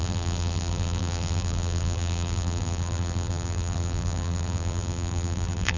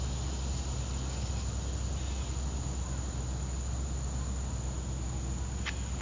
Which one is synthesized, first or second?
first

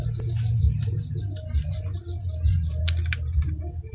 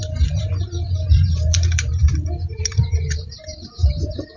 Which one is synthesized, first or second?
second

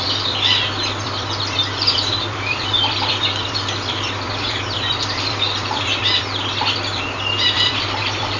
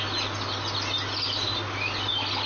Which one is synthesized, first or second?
first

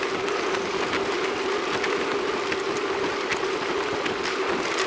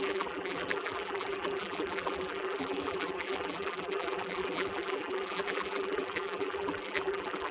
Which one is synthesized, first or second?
second